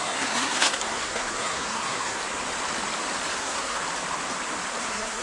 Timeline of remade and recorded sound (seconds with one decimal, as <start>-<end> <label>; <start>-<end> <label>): 0.0-2.2 remade; 2.2-3.4 recorded; 3.4-3.8 remade; 3.8-4.8 recorded; 4.8-5.2 remade